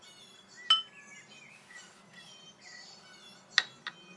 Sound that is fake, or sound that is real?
real